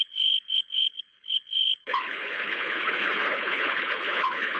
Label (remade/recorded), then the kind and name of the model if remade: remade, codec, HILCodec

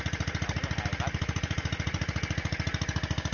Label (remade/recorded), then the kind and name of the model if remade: recorded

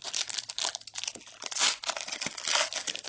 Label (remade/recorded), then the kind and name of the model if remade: recorded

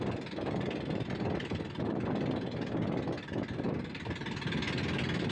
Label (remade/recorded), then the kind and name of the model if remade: recorded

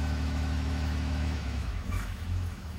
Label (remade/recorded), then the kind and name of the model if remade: remade, autoencoder, DAC-VAE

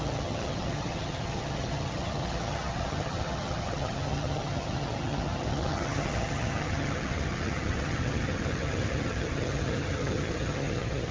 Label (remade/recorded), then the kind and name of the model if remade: remade, vocoder, HiFi-GAN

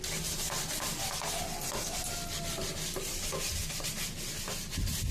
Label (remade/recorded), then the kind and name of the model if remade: recorded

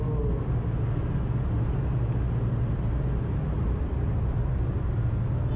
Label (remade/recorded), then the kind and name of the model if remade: recorded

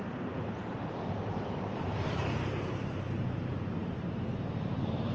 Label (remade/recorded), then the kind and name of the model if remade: remade, vocoder, BigVGAN v2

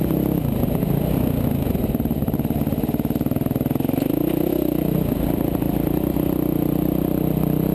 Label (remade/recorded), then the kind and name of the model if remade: recorded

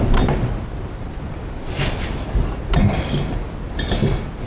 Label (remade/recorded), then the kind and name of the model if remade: recorded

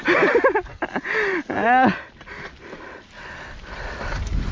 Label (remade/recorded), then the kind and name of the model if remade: recorded